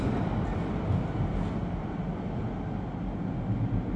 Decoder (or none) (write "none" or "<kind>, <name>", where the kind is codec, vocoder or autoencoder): none